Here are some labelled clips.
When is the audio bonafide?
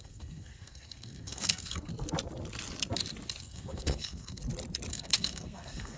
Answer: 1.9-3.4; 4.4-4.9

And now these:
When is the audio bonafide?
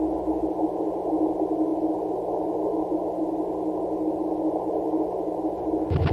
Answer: 0.0-6.1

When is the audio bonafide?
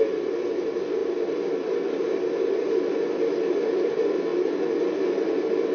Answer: 0.0-5.7